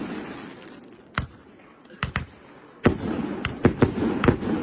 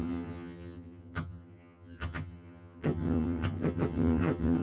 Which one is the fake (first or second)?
second